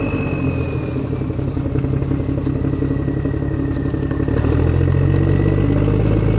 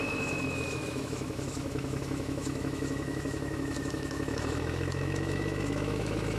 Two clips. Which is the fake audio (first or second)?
second